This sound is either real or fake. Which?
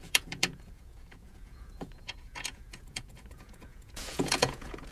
fake